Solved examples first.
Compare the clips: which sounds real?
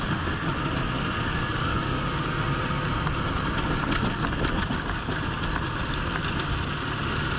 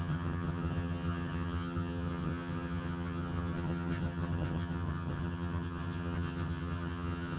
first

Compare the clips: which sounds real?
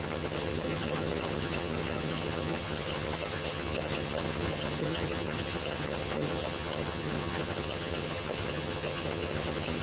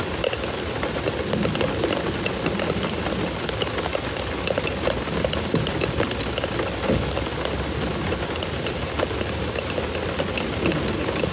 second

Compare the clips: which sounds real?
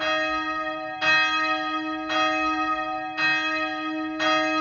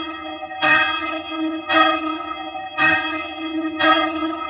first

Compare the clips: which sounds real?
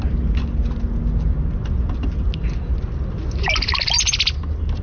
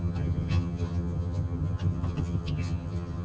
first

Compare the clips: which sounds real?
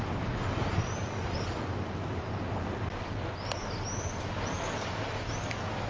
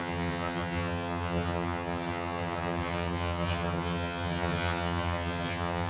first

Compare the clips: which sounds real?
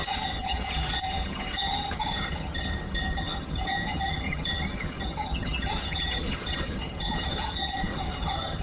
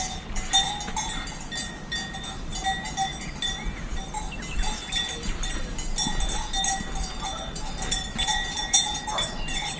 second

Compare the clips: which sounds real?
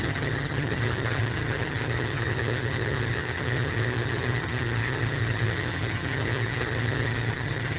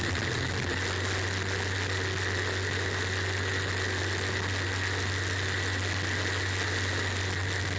second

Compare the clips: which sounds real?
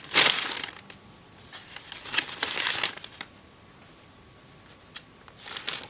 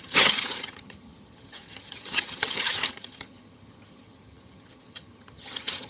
first